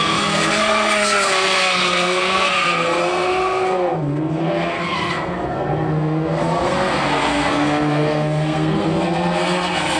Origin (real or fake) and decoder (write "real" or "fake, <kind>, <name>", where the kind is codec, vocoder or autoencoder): fake, codec, SNAC